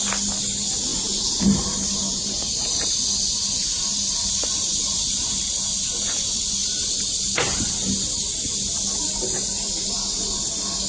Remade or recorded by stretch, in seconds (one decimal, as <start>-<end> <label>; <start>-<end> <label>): 0.0-0.9 recorded; 0.9-3.0 remade; 3.0-3.9 recorded; 3.9-5.5 remade; 5.5-10.9 recorded